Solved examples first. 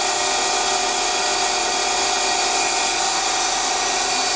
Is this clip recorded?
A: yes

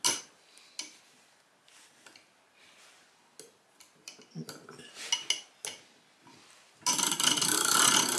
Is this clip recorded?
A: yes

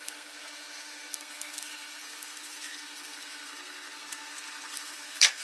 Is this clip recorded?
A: no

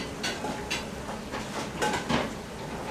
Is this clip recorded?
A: yes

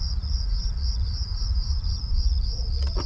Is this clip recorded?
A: no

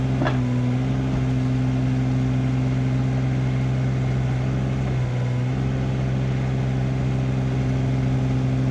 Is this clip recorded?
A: yes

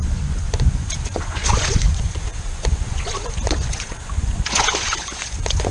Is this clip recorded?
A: no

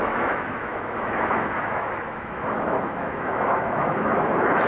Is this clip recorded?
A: no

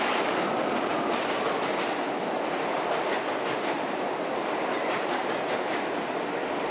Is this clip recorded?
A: yes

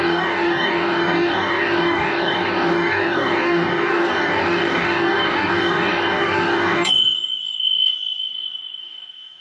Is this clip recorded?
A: no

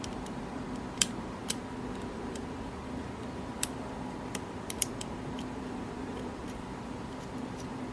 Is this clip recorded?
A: no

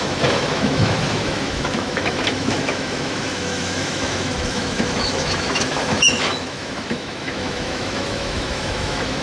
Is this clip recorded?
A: no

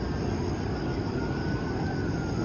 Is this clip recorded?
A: yes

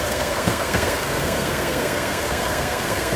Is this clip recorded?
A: no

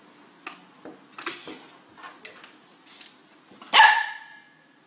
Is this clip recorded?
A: yes